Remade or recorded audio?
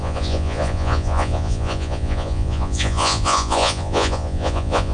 remade